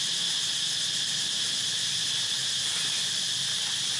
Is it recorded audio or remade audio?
recorded